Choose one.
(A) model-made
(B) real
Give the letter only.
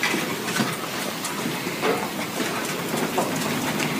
B